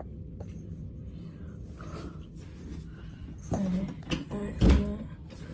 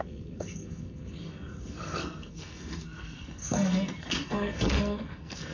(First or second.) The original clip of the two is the first